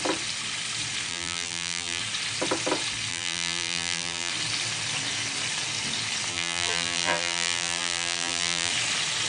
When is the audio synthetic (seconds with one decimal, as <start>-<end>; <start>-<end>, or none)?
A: 1.1-2.0; 3.1-4.3; 6.3-8.7